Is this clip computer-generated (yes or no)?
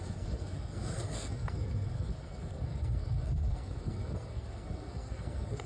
yes